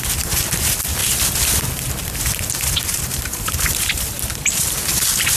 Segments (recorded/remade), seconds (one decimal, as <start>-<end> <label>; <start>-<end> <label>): 0.0-5.4 remade